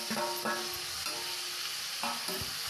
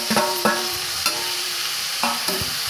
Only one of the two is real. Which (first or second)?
first